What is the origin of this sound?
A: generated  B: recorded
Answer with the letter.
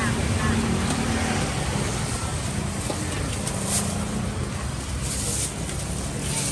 B